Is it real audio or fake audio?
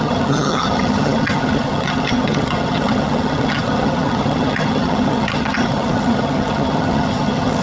fake